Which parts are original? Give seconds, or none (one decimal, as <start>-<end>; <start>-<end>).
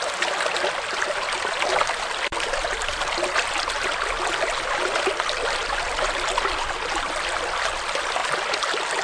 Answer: 0.0-9.0